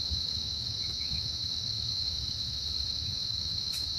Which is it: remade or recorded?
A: remade